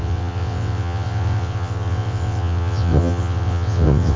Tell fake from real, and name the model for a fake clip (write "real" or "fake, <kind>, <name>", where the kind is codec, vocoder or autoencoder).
fake, vocoder, WaveNeXt